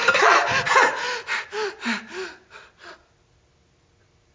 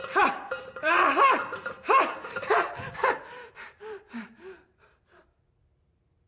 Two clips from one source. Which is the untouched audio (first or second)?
first